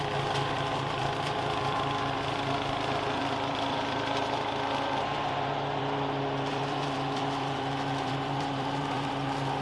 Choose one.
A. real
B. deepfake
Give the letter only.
B